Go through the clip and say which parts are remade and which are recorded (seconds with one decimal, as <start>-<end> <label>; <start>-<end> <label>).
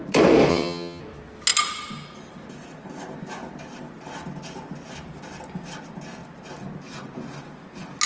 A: 0.0-0.5 recorded; 0.5-1.0 remade; 1.0-8.1 recorded